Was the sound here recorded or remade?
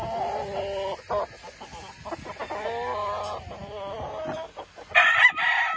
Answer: recorded